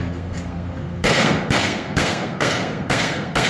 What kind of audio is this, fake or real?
fake